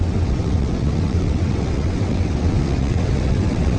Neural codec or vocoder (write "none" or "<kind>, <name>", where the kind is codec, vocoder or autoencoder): vocoder, WaveNeXt